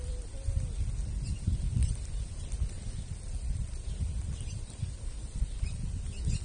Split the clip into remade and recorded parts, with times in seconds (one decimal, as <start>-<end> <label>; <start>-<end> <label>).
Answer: 0.0-6.4 recorded